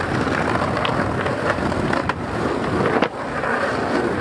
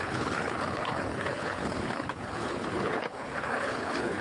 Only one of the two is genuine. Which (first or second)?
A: first